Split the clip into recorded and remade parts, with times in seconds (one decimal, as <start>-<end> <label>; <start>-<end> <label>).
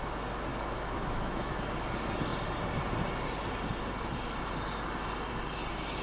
0.0-0.5 recorded; 0.5-1.7 remade; 1.7-6.0 recorded